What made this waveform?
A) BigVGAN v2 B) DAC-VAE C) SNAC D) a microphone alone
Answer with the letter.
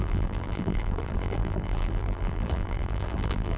A